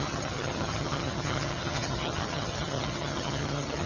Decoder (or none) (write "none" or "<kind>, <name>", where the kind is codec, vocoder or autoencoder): vocoder, HiFi-GAN